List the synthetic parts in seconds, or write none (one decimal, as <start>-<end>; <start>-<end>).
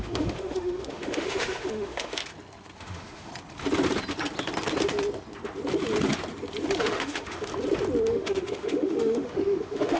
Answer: 0.0-2.2; 2.8-3.3; 6.8-7.5; 8.1-10.0